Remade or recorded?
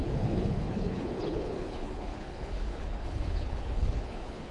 remade